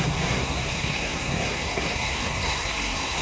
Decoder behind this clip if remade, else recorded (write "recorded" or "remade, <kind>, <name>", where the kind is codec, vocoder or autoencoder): remade, codec, SNAC